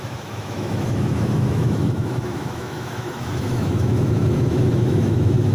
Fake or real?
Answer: fake